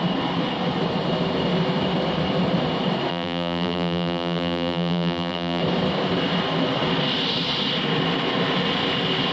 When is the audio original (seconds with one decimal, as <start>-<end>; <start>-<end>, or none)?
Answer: 0.0-3.1; 5.6-9.3